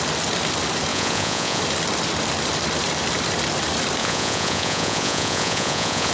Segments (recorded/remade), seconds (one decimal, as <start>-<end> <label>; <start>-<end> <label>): 0.0-0.9 recorded; 0.9-1.6 remade; 1.6-4.0 recorded; 4.0-6.1 remade